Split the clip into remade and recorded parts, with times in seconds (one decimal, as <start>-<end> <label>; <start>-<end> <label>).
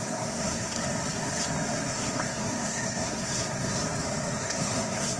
0.0-0.8 remade; 0.8-1.9 recorded; 1.9-3.8 remade; 3.8-4.4 recorded; 4.4-5.2 remade